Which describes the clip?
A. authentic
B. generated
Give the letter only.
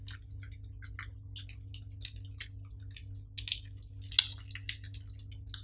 A